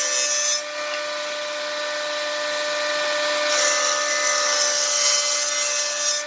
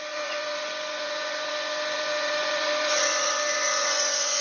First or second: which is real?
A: first